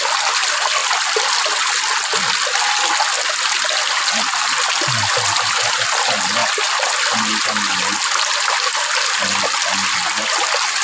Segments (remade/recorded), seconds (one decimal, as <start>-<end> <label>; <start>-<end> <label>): 0.0-10.8 recorded